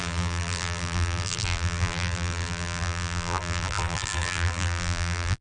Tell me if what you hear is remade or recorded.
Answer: remade